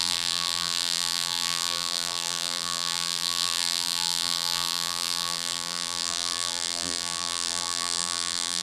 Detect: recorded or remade remade